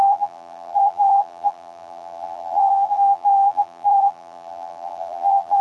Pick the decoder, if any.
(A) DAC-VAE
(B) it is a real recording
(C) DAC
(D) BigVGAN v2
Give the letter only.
D